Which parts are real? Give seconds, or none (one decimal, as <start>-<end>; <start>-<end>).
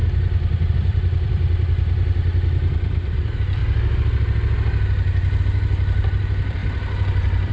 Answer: 0.0-0.7; 3.6-5.4; 6.6-7.5